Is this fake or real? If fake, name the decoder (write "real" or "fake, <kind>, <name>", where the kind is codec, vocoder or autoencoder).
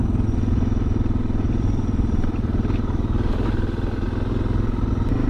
real